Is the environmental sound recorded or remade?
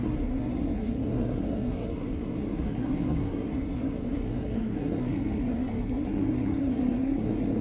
remade